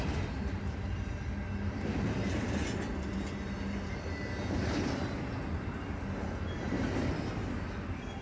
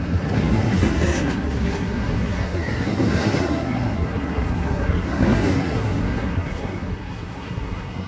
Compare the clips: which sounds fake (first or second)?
second